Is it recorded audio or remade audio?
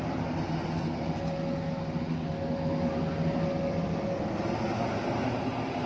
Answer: recorded